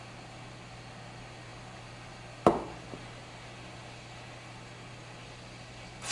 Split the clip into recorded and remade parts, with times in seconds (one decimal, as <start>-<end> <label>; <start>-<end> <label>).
0.0-6.1 recorded